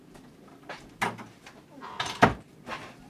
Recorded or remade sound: recorded